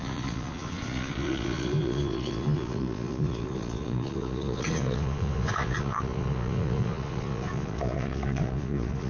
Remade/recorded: remade